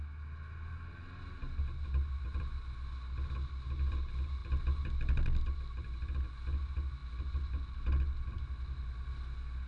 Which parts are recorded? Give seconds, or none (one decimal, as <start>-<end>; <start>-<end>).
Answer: 0.0-9.7